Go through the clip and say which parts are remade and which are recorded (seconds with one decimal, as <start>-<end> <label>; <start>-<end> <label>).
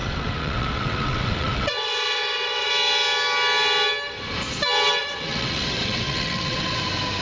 0.0-2.7 remade; 2.7-5.0 recorded; 5.0-6.8 remade; 6.8-7.2 recorded